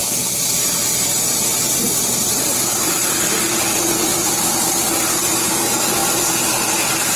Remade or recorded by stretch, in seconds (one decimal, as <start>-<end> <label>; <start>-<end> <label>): 0.0-7.2 recorded